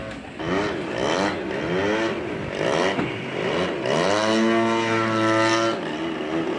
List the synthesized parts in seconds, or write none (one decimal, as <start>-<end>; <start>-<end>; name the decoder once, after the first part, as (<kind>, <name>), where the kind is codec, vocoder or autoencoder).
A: none